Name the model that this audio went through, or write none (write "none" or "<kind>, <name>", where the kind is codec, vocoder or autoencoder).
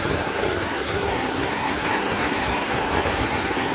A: codec, SNAC